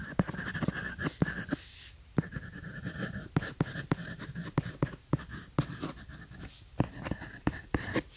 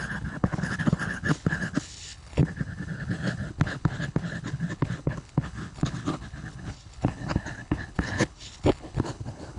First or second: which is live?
first